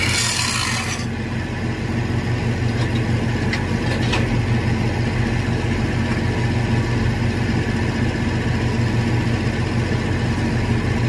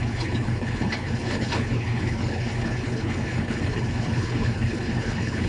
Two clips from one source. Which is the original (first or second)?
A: first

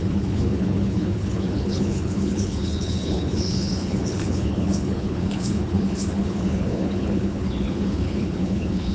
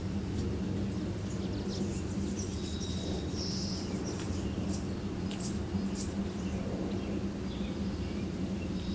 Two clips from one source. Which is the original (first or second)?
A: second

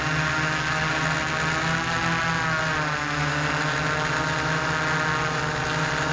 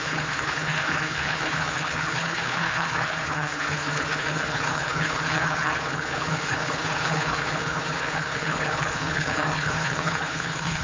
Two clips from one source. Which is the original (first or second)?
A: first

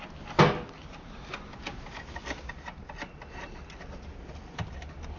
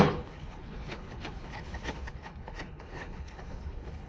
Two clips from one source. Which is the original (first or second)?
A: first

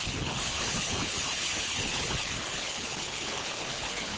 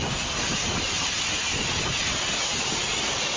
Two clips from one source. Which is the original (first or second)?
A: second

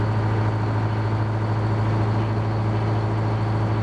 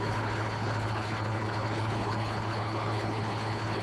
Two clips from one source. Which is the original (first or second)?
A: first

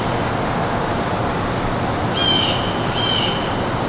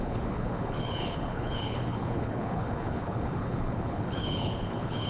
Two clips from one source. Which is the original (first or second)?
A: first